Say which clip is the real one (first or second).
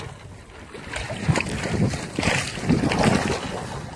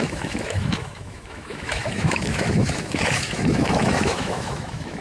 first